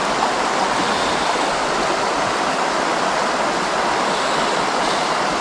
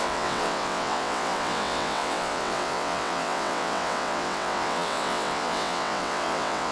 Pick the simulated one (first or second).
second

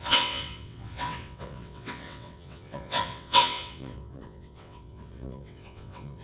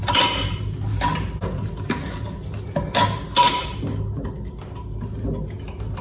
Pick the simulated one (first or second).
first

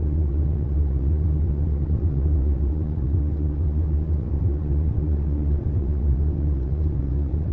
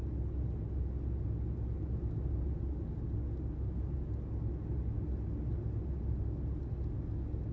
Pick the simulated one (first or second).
first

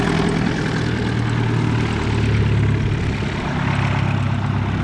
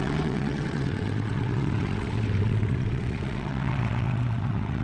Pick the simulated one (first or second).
second